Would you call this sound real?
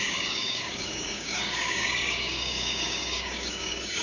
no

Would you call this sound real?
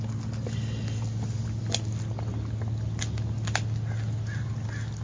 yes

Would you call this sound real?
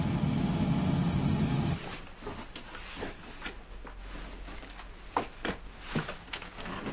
yes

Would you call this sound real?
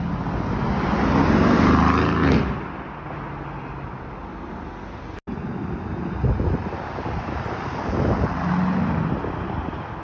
yes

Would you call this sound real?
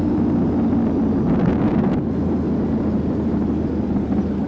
yes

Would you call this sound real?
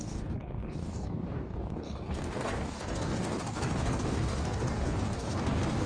no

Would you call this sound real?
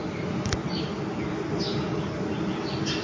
yes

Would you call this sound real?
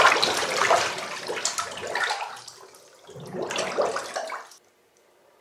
yes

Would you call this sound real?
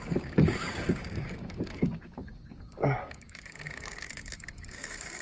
no